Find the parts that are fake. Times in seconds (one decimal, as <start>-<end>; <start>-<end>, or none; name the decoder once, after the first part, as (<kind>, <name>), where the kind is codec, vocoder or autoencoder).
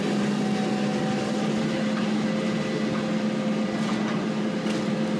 none